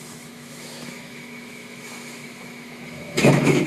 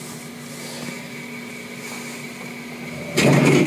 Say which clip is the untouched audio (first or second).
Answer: second